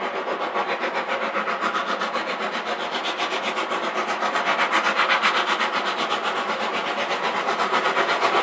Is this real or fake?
real